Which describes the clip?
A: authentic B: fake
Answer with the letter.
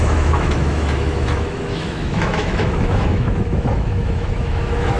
B